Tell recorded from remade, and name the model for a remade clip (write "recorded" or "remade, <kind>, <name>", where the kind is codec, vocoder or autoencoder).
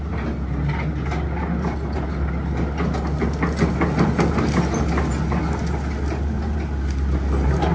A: recorded